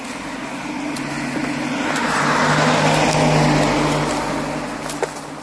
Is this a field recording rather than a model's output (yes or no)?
yes